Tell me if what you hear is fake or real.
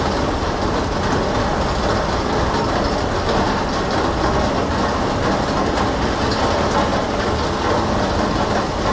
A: real